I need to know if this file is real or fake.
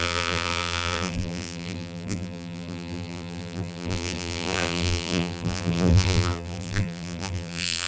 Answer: fake